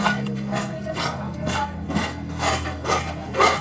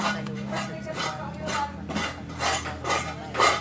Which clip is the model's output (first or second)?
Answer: first